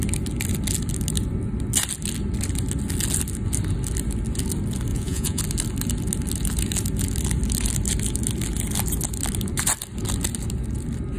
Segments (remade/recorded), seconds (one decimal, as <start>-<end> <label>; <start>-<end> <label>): 0.0-4.9 recorded; 4.9-5.4 remade; 5.4-11.2 recorded